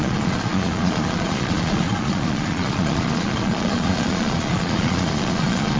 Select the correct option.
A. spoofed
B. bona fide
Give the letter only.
A